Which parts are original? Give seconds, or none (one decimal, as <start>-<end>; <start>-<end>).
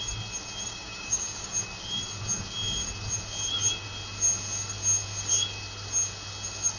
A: 0.0-0.7; 1.5-6.8